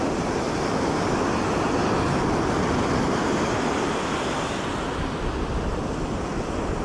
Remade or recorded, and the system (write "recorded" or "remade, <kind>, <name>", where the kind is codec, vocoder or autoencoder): recorded